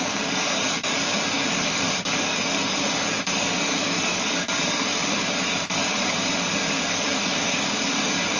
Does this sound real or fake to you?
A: fake